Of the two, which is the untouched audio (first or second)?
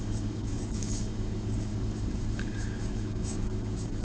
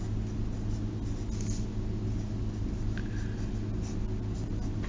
second